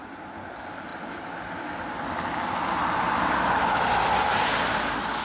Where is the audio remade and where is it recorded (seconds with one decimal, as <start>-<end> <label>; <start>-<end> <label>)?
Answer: 0.0-5.2 recorded